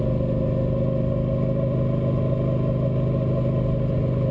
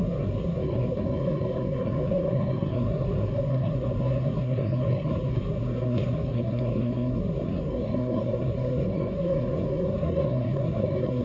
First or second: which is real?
first